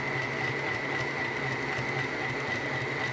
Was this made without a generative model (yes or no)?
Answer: yes